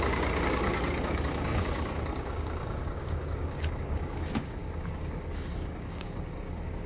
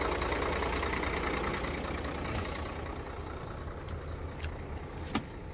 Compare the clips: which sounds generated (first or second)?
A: first